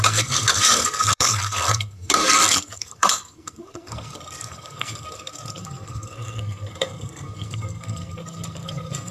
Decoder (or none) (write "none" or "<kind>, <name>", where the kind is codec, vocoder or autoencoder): codec, SNAC